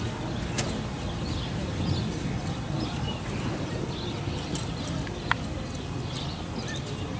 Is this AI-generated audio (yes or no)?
no